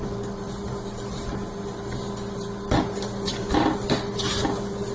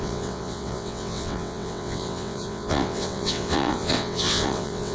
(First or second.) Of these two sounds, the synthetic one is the second